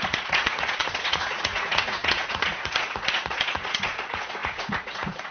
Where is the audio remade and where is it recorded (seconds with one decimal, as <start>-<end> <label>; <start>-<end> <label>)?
0.0-5.3 remade

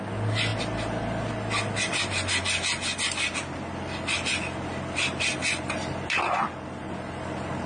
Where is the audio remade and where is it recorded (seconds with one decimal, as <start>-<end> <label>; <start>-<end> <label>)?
0.0-0.5 recorded; 0.5-1.3 remade; 1.3-7.7 recorded

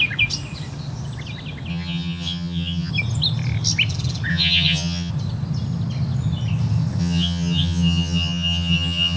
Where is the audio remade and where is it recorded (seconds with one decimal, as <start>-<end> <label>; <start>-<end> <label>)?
0.0-1.7 recorded; 1.7-2.9 remade; 2.9-4.3 recorded; 4.3-5.1 remade; 5.1-7.0 recorded; 7.0-9.2 remade

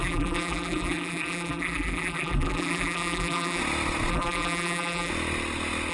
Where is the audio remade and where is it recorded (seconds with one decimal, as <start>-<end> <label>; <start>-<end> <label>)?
0.0-3.6 remade; 3.6-4.1 recorded; 4.1-5.1 remade; 5.1-5.9 recorded

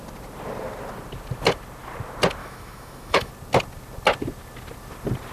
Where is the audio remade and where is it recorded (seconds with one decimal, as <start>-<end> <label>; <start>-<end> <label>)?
0.0-2.4 recorded; 2.4-3.3 remade; 3.3-5.3 recorded

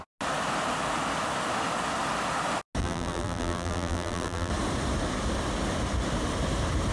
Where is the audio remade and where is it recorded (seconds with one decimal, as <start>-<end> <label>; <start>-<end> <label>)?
0.0-2.8 recorded; 2.8-4.5 remade; 4.5-6.9 recorded

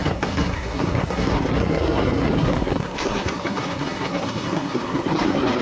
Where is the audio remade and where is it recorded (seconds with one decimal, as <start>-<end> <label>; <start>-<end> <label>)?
0.0-5.6 remade

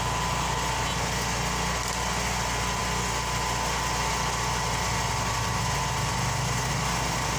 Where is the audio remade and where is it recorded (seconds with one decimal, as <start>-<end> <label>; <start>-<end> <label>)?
0.0-7.4 recorded